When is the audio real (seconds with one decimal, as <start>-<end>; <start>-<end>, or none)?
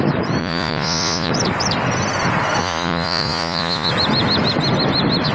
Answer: 0.0-0.4; 1.3-2.6; 3.9-5.3